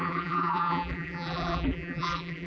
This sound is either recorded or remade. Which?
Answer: remade